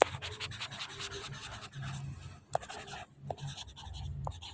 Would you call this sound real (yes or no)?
yes